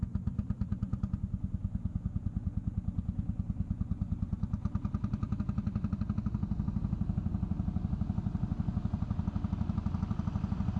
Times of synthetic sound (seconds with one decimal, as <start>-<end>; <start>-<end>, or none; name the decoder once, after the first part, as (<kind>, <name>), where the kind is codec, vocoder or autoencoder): 4.6-5.4 (vocoder, BigVGAN v2)